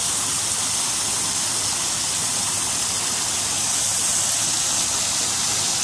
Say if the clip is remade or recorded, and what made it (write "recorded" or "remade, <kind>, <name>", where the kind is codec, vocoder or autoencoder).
recorded